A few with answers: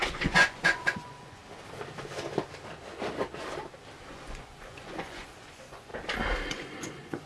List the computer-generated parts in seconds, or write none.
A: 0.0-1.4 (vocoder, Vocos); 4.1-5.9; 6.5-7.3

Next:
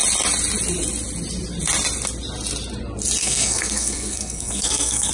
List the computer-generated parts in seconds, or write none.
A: 3.2-5.1 (codec, SNAC)

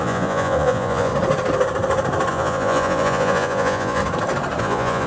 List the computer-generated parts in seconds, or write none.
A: 0.0-1.1 (vocoder, Vocos); 2.3-4.0; 4.6-5.1

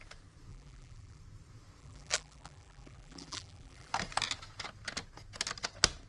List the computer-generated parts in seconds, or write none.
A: 0.5-1.2 (vocoder, BigVGAN v2); 1.8-3.9

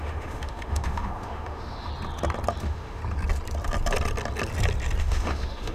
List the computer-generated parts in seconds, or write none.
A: 0.0-1.9 (autoencoder, DAC-VAE); 2.6-3.0; 5.0-5.7

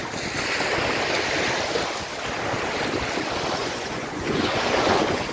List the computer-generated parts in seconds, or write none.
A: 3.6-5.3 (vocoder, Vocos)

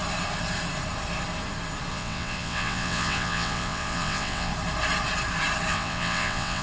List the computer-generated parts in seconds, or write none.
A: 1.9-4.5 (vocoder, WaveNeXt); 5.7-6.6